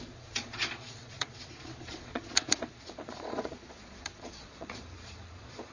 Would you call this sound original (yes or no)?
no